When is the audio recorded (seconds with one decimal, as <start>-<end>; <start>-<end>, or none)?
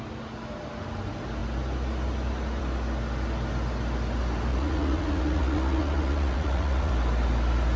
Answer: 0.0-4.5; 6.9-7.8